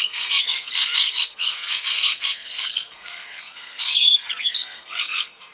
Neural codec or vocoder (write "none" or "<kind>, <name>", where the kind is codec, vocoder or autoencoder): codec, SNAC